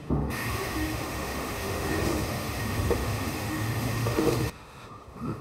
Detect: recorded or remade remade